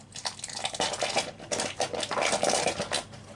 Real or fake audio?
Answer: real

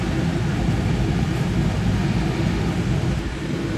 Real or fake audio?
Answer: real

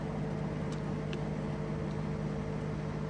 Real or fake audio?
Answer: real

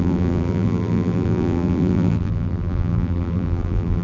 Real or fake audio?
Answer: fake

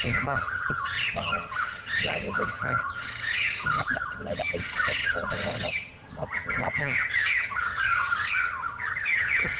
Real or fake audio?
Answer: fake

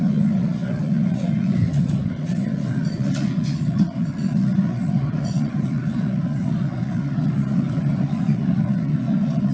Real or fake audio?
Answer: fake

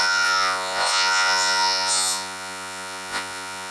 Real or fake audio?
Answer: fake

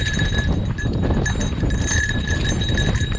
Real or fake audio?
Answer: real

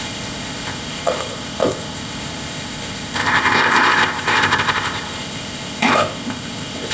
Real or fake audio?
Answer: fake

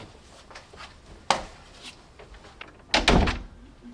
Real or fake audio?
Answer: real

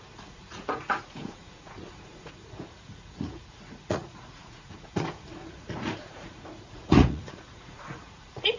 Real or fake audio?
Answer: fake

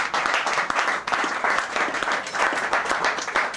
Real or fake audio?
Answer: real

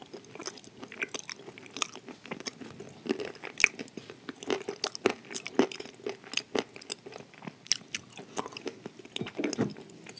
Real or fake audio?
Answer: real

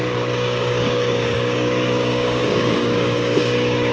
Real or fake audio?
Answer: fake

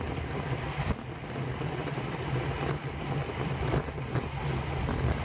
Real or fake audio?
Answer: real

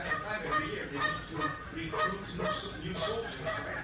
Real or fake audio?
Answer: real